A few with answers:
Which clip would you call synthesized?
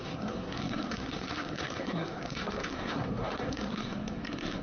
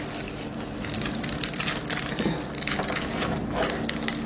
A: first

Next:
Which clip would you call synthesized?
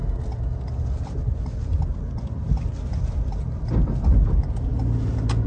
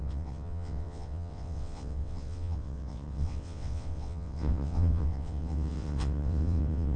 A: second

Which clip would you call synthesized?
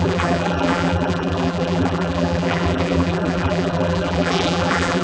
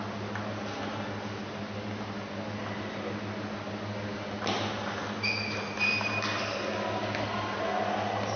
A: first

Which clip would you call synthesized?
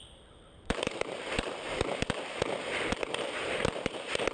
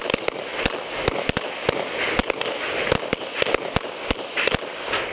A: first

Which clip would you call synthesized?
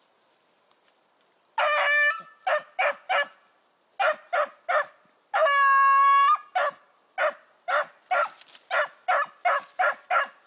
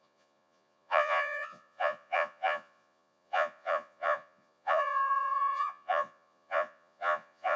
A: second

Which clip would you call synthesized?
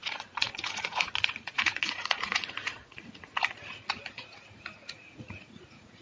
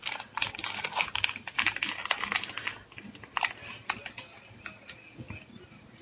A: first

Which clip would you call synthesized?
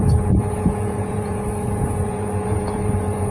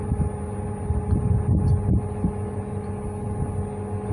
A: first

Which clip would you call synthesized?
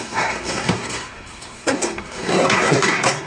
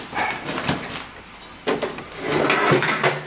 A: first